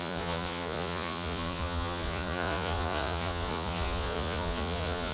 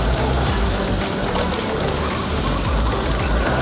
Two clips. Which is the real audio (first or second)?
second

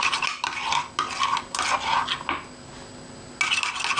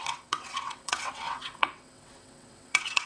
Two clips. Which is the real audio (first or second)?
first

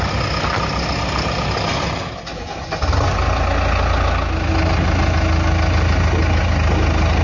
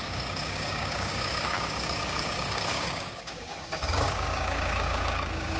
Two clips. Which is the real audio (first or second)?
first